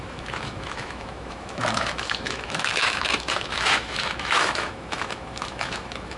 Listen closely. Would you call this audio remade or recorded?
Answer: remade